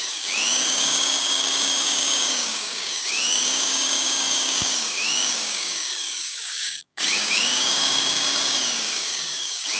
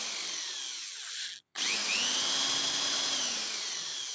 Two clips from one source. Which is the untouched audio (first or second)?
second